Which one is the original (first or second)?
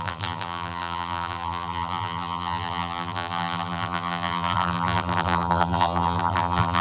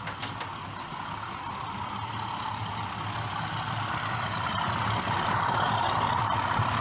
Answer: second